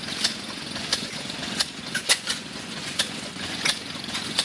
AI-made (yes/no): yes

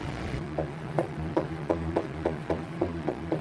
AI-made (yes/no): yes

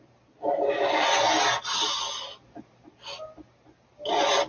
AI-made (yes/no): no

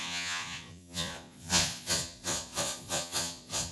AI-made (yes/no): yes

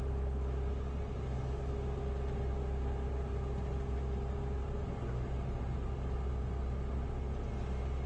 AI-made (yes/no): no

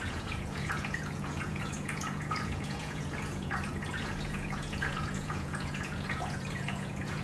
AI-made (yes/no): yes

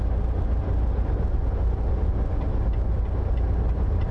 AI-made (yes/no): no